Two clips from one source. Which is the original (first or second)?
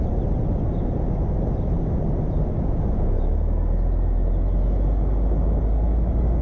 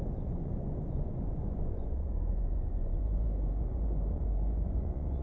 first